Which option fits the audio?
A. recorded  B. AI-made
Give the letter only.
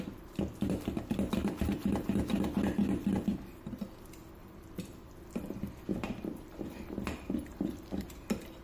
B